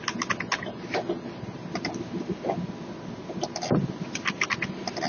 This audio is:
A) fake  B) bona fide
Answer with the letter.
B